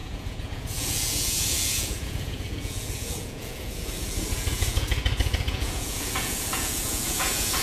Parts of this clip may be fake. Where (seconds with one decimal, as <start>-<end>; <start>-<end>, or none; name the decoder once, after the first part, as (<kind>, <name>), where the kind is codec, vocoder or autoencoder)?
0.0-7.6 (vocoder, Vocos)